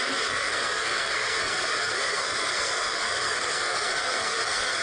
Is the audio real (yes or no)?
no